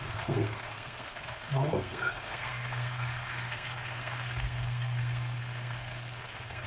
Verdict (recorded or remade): remade